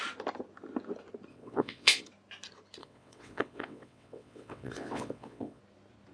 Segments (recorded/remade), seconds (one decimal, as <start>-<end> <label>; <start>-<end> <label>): 0.0-1.3 recorded; 1.3-2.0 remade; 2.0-2.8 recorded; 2.8-5.6 remade; 5.6-6.1 recorded